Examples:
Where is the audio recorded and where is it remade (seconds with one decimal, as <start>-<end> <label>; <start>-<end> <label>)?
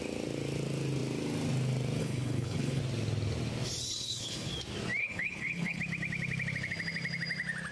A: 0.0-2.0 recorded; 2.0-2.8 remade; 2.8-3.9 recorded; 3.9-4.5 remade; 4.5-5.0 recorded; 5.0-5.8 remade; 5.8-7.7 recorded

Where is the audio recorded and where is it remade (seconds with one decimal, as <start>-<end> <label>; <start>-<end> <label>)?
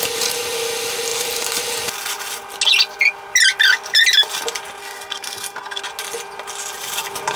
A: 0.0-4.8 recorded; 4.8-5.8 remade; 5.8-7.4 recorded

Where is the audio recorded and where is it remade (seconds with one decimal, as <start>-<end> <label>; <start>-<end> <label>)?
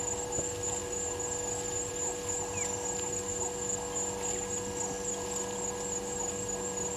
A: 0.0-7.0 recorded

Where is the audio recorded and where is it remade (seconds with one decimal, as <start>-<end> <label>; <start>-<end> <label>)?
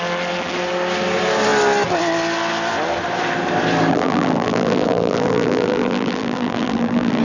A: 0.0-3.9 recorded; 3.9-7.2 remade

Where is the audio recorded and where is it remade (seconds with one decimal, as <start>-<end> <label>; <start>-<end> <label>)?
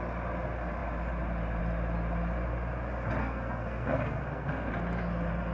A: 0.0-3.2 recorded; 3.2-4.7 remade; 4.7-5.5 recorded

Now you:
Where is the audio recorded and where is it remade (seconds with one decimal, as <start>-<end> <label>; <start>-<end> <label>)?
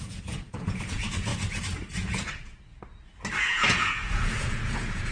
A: 0.0-1.3 remade; 1.3-1.9 recorded; 1.9-2.7 remade; 2.7-3.4 recorded; 3.4-5.1 remade